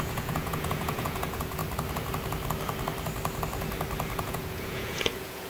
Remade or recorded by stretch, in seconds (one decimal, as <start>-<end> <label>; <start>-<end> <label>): 0.0-1.6 remade; 1.6-4.2 recorded; 4.2-5.5 remade